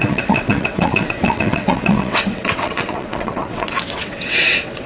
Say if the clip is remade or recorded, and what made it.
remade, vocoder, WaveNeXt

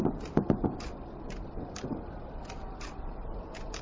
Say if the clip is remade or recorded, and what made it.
recorded